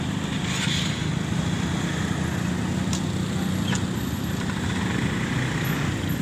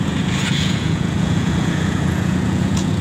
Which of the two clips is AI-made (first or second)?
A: second